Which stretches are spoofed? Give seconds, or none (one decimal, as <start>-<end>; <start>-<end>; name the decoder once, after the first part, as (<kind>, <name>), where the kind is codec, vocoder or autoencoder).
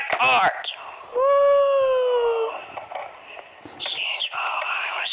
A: 2.6-3.5 (vocoder, BigVGAN v2)